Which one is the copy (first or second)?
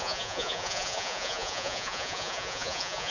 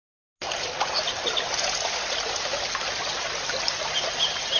first